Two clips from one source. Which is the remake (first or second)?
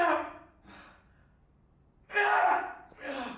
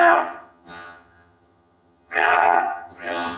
second